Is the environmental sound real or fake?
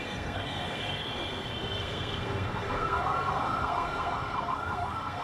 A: fake